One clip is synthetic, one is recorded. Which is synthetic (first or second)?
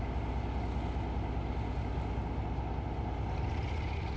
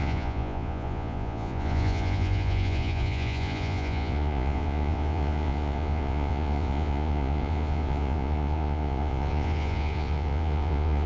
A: second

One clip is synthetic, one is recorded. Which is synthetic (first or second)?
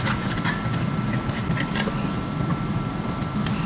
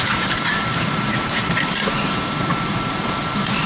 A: second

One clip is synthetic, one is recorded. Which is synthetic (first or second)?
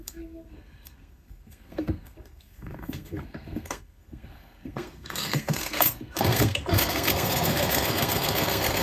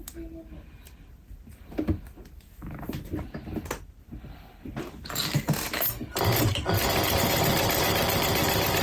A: first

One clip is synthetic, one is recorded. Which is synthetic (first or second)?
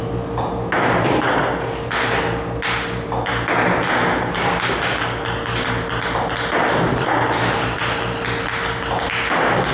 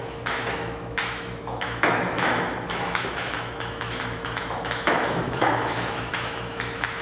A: second